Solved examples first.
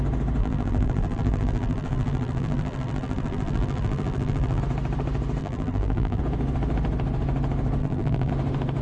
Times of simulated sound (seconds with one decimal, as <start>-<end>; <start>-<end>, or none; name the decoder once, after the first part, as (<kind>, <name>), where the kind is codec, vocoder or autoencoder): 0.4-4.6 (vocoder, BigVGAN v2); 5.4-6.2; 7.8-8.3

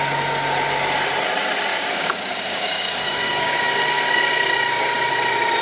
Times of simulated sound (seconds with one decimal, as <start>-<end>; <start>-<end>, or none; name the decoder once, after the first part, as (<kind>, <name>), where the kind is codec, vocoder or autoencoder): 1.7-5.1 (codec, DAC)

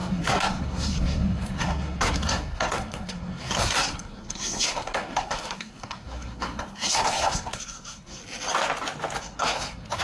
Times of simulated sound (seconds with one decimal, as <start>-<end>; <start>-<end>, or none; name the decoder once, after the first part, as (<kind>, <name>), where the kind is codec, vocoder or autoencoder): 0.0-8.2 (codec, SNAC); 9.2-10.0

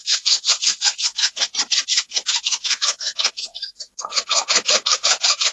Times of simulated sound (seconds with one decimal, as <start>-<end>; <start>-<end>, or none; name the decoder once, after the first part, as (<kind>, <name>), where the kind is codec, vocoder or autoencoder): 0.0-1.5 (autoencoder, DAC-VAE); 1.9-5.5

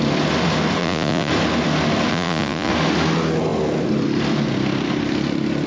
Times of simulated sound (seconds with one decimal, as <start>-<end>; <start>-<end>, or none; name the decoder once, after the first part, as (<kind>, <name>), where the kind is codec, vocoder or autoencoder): 0.8-1.3 (vocoder, Vocos); 2.1-2.7

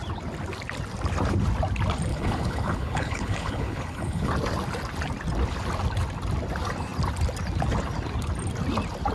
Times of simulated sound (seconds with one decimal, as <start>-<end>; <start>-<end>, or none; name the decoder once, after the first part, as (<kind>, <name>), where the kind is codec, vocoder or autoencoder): 2.1-4.3 (codec, HILCodec)

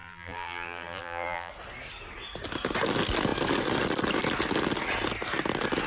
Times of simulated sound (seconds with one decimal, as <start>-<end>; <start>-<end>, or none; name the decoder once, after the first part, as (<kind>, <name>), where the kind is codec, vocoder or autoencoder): 0.0-1.5 (vocoder, BigVGAN v2)